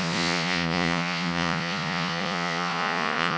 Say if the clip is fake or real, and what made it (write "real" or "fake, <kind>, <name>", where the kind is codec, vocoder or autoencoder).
fake, vocoder, Vocos